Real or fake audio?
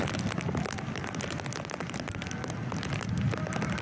real